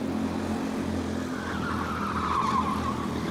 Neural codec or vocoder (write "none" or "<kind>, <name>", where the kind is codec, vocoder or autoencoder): none